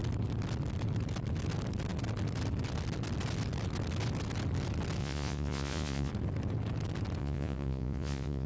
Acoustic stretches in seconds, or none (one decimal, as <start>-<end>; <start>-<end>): 0.0-5.0; 6.1-7.2